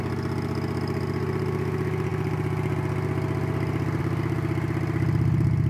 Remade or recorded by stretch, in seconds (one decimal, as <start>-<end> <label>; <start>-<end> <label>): 0.0-5.7 recorded